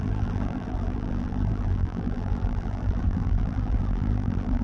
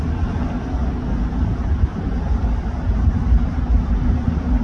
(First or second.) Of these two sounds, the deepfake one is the first